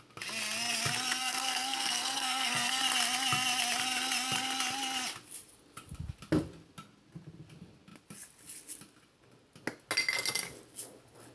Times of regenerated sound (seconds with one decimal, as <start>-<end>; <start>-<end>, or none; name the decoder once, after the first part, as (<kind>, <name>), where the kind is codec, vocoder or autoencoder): 1.2-2.8 (codec, SNAC)